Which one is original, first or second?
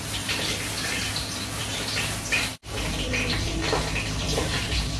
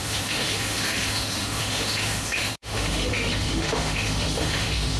first